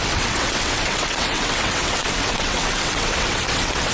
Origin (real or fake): fake